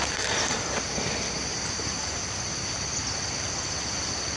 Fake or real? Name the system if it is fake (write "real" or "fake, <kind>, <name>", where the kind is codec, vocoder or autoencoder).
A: real